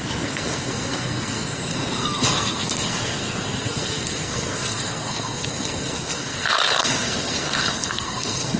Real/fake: fake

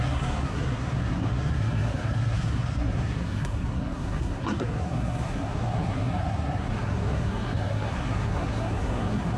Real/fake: fake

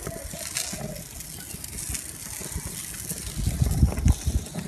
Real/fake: real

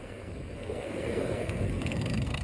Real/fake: fake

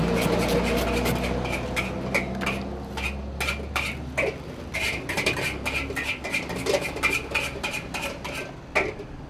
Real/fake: real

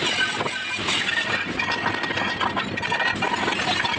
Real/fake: real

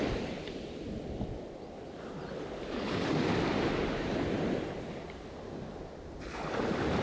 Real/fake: real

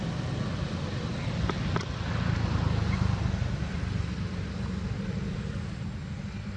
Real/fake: real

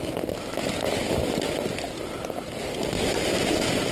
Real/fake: real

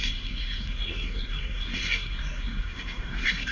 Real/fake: fake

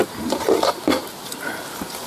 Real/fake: real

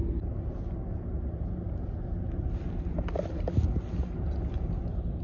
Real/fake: real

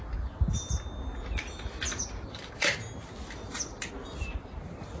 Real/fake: real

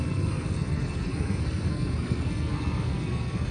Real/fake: fake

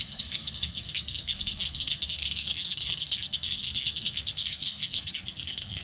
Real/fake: fake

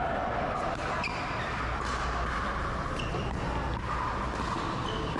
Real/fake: real